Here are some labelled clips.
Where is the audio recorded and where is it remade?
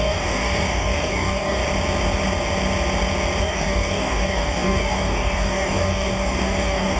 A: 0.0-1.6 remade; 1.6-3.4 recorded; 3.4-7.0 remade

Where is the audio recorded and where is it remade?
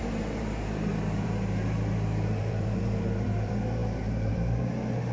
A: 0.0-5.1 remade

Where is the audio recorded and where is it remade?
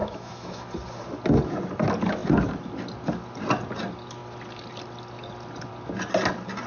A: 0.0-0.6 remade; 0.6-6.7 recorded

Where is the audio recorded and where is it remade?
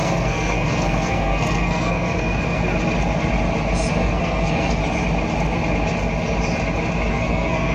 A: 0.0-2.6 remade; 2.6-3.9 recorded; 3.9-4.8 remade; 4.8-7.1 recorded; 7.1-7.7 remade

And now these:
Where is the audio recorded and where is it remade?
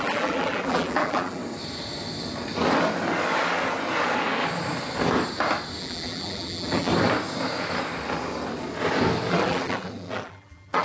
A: 0.0-1.4 remade; 1.4-5.8 recorded; 5.8-6.9 remade; 6.9-9.3 recorded; 9.3-10.8 remade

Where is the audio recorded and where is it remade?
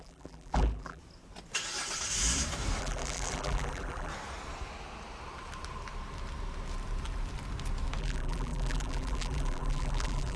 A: 0.0-1.0 remade; 1.0-2.8 recorded; 2.8-4.1 remade; 4.1-8.0 recorded; 8.0-10.4 remade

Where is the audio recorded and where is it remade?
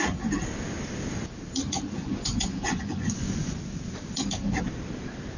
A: 0.0-2.0 recorded; 2.0-3.6 remade; 3.6-5.4 recorded